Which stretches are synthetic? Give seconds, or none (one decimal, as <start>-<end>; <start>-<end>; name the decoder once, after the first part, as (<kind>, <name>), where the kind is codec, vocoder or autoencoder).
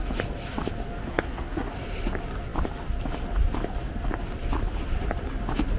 1.1-1.7 (codec, SNAC)